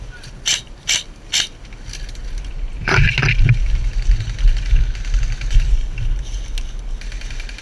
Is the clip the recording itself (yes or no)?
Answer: yes